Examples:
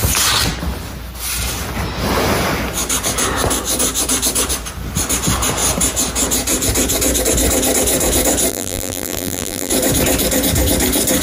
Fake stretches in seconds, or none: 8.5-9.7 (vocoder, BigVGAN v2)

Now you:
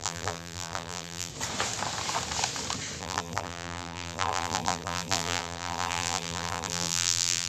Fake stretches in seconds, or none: 0.0-1.3 (vocoder, BigVGAN v2); 3.0-7.5

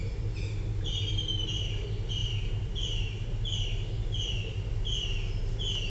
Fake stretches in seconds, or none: none

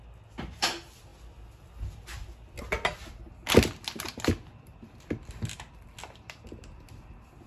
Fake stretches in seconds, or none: none

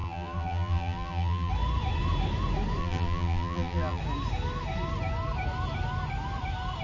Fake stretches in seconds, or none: 0.0-1.5 (vocoder, BigVGAN v2); 2.8-4.0

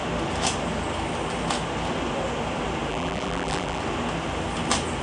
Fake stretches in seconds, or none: 2.9-3.8 (vocoder, BigVGAN v2)